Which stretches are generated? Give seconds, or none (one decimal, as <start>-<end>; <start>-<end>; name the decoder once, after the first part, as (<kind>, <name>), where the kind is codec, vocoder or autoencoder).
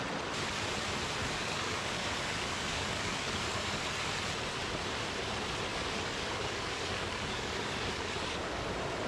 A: 1.2-3.8 (codec, DAC); 5.7-8.7